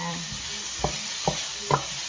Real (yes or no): yes